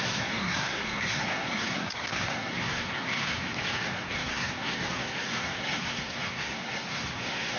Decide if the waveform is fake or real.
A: fake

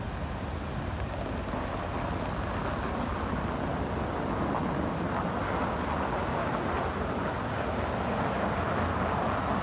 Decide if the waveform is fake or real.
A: real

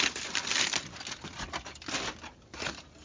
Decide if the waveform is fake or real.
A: real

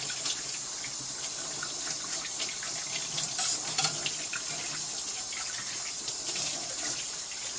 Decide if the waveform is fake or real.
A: real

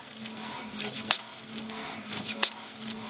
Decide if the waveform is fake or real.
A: fake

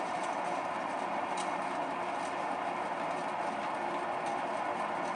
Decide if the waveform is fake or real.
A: real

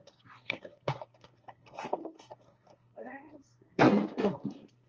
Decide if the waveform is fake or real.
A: fake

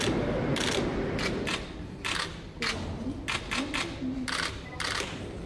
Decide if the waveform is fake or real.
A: real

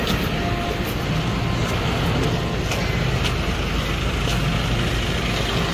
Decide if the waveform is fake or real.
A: real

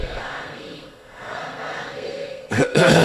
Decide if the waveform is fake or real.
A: fake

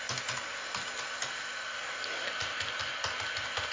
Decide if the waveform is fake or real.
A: real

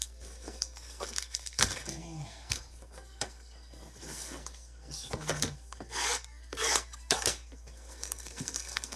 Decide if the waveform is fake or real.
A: fake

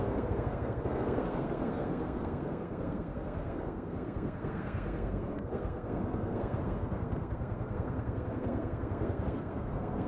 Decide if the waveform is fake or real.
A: fake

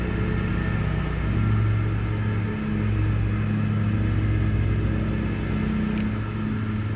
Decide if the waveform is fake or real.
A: real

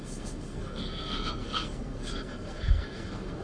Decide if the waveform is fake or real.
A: fake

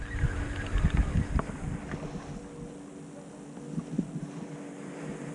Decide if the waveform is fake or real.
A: real